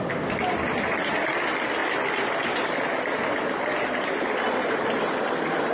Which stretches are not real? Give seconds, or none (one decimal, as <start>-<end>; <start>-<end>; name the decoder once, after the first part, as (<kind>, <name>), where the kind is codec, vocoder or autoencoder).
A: none